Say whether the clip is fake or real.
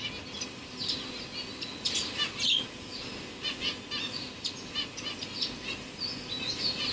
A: real